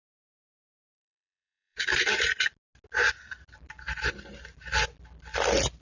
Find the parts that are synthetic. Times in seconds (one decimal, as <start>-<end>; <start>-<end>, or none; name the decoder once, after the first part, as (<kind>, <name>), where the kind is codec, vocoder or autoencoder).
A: 0.4-1.9 (codec, DAC)